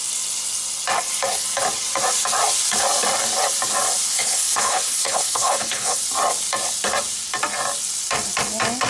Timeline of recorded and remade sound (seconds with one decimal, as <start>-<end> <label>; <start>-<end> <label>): 0.0-4.1 recorded; 4.1-6.0 remade; 6.0-8.9 recorded